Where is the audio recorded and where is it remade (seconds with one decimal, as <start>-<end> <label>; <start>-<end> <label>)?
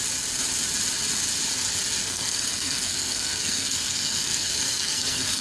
0.0-2.0 recorded; 2.0-5.4 remade